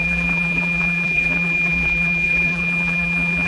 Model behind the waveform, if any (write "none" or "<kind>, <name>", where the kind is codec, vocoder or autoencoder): vocoder, BigVGAN v2